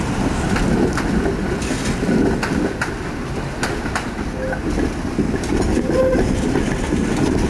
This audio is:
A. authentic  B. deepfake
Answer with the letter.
A